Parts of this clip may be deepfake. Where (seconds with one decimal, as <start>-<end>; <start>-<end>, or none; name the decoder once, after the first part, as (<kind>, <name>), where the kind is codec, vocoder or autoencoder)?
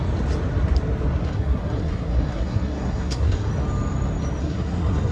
1.2-3.5 (codec, SNAC); 4.4-5.1